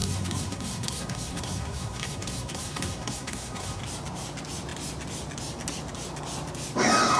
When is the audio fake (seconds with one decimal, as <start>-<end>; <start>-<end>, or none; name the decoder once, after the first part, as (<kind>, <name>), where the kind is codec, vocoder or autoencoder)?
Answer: 0.0-3.8 (codec, SNAC)